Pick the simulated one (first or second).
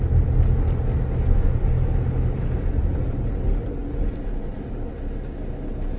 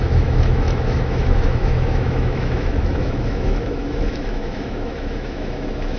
second